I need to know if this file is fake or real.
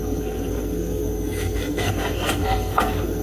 fake